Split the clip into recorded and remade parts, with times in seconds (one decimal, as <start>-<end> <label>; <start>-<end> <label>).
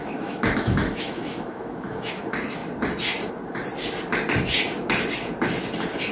0.0-2.1 remade; 2.1-6.1 recorded